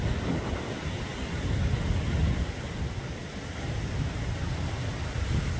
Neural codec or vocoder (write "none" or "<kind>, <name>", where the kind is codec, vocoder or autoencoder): none